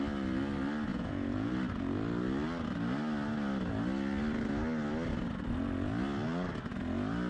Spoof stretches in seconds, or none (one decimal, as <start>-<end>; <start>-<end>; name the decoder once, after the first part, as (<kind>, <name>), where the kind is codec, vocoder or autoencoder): 0.9-1.5 (vocoder, Vocos)